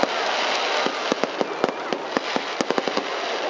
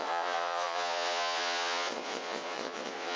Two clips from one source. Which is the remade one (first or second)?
second